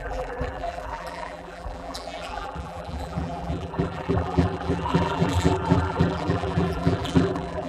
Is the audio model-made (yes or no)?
yes